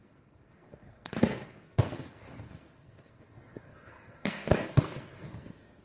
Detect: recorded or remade remade